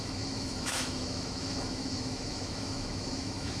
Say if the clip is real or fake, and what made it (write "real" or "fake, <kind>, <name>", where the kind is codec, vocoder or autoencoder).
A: fake, autoencoder, DAC-VAE